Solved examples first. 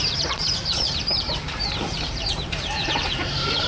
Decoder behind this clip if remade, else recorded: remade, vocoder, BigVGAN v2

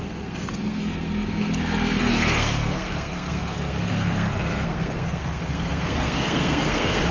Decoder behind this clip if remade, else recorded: remade, codec, SNAC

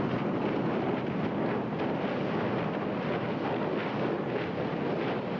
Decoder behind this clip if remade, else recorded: recorded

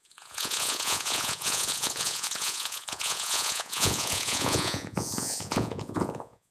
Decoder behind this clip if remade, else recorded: remade, vocoder, Vocos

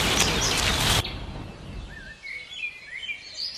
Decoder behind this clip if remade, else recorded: recorded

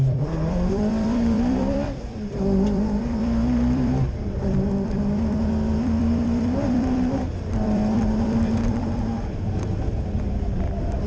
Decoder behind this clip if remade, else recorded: remade, vocoder, BigVGAN v2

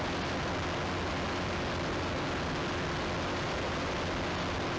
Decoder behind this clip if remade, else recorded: recorded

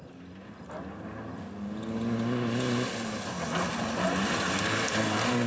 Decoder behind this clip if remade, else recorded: recorded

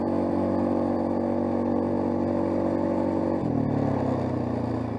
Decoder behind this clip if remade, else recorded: remade, vocoder, BigVGAN v2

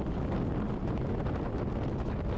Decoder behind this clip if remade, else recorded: recorded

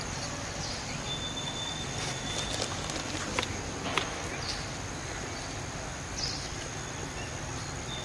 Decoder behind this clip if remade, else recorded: recorded